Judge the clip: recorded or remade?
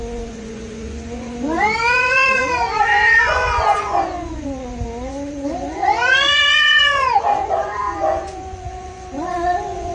remade